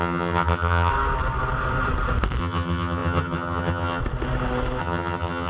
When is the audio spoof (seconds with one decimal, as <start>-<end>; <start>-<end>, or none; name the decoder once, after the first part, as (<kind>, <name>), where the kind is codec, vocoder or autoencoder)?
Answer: 0.0-0.9 (vocoder, HiFi-GAN); 2.4-4.0; 4.8-5.5